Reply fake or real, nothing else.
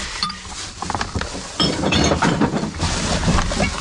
fake